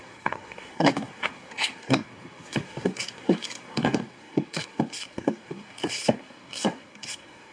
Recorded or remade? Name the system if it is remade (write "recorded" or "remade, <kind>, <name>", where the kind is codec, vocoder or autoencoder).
remade, codec, SNAC